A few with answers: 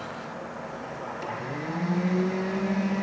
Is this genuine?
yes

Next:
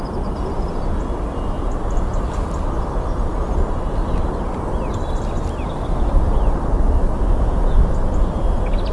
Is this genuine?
yes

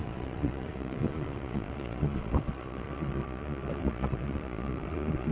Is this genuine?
no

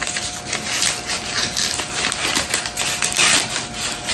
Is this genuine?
yes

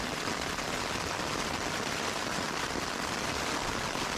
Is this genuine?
yes